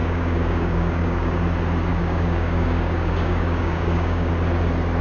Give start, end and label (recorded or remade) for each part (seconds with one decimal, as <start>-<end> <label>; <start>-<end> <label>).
0.0-1.4 remade; 1.4-1.9 recorded; 1.9-4.3 remade; 4.3-5.0 recorded